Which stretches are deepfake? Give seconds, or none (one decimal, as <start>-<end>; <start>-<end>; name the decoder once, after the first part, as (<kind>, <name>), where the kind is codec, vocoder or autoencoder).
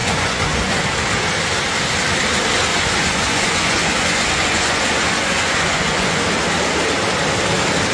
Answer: 0.0-0.8 (vocoder, Vocos); 2.7-6.2